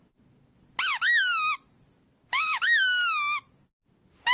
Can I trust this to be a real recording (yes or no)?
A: yes